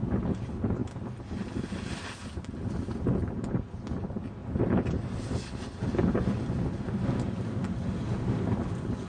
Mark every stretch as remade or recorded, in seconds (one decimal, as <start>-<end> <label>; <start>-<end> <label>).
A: 0.0-9.1 recorded